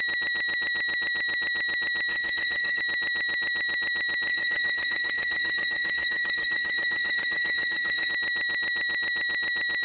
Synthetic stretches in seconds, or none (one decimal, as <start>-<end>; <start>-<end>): 2.1-2.8; 4.3-8.1